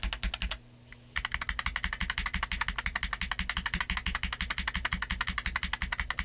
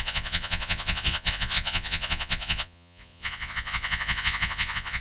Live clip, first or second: first